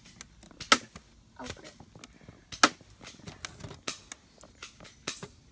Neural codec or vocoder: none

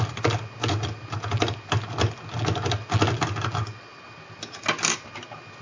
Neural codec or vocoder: none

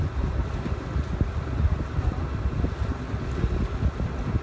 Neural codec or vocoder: none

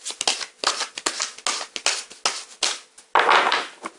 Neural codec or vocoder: none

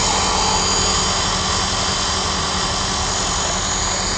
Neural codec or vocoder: none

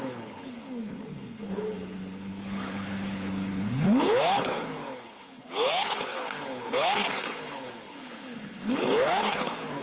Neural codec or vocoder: codec, HILCodec